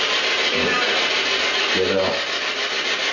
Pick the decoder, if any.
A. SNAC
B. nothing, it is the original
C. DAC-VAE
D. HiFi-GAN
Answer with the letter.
B